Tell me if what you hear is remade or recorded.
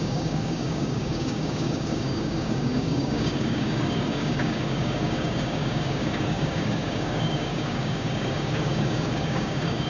remade